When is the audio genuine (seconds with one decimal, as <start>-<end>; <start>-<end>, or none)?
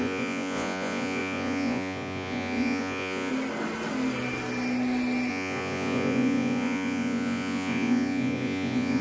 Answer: 3.3-5.3